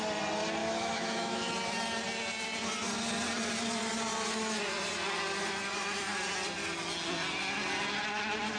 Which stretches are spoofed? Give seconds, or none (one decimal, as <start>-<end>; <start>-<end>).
0.6-1.5